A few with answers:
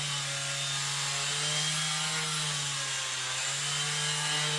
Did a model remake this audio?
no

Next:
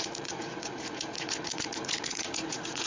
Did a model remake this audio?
yes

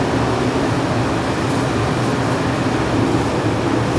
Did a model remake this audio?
no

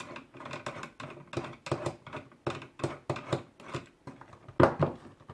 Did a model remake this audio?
no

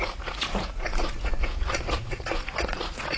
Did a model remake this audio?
yes